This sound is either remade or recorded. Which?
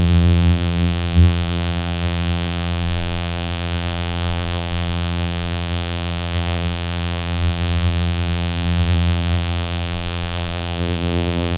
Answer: remade